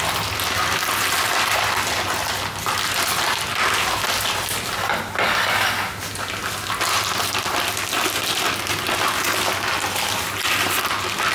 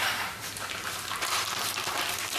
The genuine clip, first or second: first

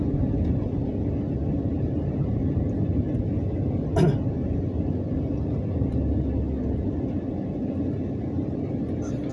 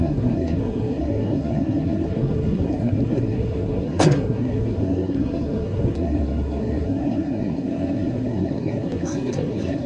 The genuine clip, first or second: first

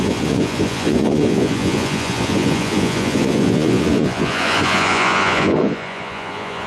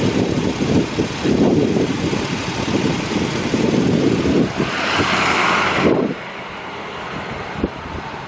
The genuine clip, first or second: second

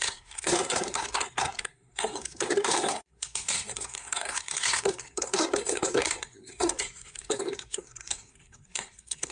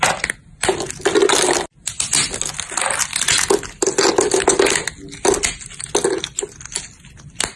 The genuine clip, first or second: second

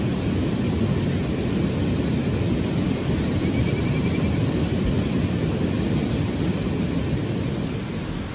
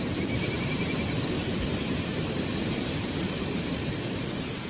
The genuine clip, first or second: first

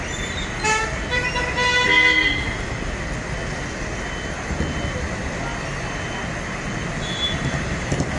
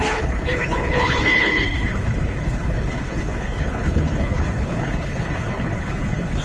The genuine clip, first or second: first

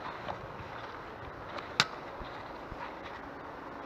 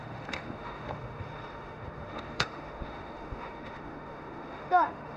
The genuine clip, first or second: first